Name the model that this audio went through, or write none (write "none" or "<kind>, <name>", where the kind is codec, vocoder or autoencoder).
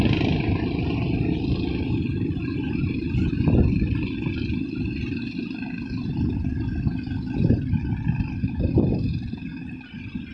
none